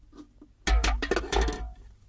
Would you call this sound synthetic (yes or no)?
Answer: no